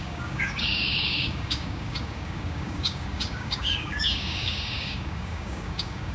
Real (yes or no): no